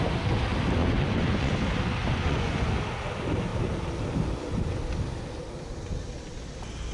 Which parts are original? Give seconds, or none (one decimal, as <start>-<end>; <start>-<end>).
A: 0.0-0.8; 1.5-2.0; 2.7-6.9